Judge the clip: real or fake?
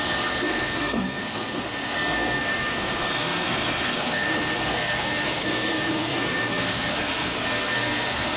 fake